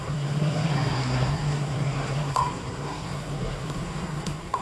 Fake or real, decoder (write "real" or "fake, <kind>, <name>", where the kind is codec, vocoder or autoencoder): fake, codec, SNAC